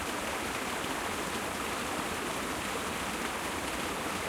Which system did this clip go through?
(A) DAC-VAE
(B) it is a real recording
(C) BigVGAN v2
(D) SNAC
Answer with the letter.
B